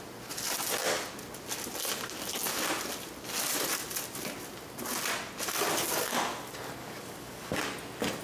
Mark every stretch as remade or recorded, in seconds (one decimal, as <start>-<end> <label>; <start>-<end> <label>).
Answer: 0.0-6.8 recorded; 6.8-7.6 remade; 7.6-8.2 recorded